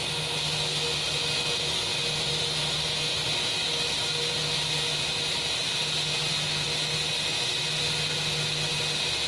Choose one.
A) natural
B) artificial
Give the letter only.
A